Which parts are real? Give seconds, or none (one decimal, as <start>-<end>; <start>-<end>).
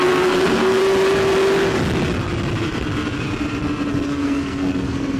0.8-3.9